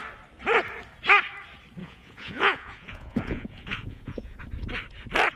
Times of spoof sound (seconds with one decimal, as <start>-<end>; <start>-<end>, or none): 1.8-4.4